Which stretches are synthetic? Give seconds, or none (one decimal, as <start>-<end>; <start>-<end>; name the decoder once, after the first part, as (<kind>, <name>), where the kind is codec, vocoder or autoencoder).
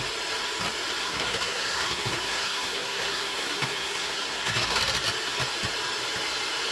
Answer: 1.0-4.8 (codec, SNAC)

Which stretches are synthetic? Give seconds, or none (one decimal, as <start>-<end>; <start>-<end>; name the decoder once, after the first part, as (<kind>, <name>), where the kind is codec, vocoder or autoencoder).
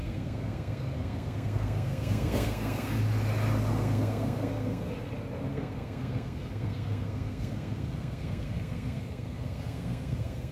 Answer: 0.0-3.0 (codec, SNAC); 3.7-4.9; 5.5-10.5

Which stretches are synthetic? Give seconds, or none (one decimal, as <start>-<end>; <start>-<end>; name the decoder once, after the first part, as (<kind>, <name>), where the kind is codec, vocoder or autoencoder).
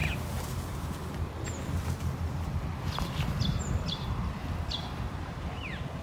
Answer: none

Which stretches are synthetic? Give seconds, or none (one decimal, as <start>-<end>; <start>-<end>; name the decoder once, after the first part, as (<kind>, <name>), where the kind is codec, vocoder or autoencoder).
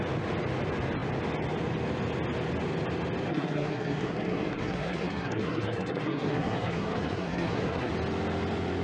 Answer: 3.3-7.9 (codec, SNAC)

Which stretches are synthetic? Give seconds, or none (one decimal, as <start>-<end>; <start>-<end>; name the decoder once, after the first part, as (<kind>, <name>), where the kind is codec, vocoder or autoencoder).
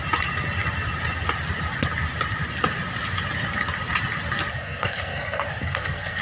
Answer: 4.5-6.2 (codec, SNAC)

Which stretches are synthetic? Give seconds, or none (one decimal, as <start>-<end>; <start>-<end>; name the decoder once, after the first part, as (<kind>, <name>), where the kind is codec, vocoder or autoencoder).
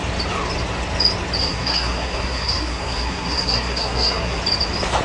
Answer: 1.4-4.4 (codec, SNAC)